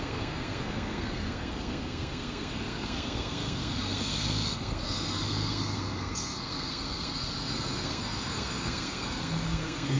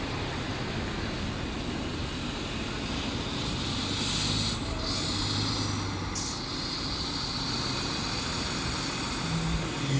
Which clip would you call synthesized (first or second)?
first